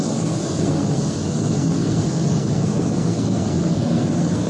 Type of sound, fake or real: fake